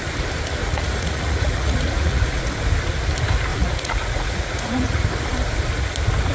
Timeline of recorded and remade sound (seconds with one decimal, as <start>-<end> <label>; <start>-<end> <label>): 0.0-0.6 recorded; 0.6-2.4 remade; 2.4-3.5 recorded; 3.5-5.1 remade; 5.1-6.3 recorded